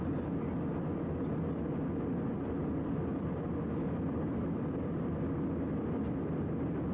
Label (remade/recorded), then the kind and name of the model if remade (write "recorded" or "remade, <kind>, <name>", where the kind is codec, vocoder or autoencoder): recorded